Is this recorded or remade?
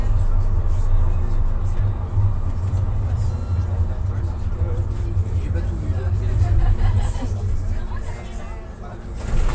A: recorded